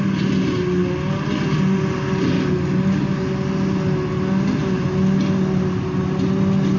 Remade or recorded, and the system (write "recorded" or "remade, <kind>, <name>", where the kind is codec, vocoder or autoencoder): recorded